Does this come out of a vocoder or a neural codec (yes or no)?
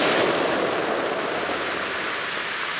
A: yes